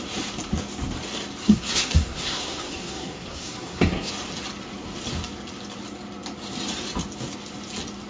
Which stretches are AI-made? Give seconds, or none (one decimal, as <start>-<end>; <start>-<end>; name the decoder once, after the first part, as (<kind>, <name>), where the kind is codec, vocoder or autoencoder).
1.4-4.1 (codec, SNAC)